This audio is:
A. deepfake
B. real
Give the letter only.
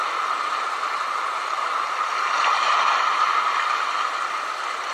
B